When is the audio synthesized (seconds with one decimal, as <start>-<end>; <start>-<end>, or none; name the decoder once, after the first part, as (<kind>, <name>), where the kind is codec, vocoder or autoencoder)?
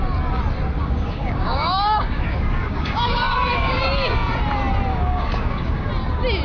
0.8-3.8 (codec, DAC); 4.9-5.9